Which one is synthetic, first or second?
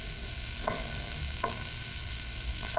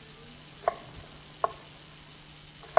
first